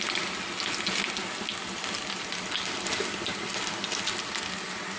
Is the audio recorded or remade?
recorded